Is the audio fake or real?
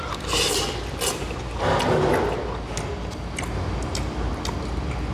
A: real